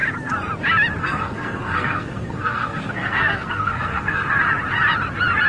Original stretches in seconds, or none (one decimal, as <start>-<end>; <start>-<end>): 0.0-1.0; 4.3-5.5